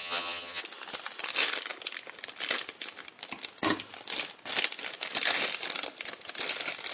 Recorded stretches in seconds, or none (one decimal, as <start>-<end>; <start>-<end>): 0.6-6.9